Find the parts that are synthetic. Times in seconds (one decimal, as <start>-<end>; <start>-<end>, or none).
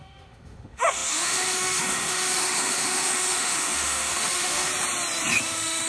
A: 0.0-4.7; 5.4-5.9